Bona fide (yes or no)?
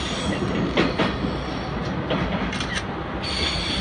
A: yes